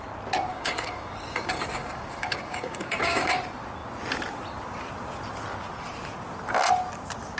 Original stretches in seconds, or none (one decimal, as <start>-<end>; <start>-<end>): 0.0-0.5; 3.4-7.4